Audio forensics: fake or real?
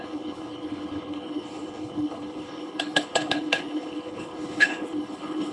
fake